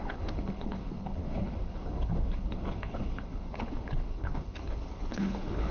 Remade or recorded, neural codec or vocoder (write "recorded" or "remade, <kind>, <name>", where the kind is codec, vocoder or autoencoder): remade, codec, HILCodec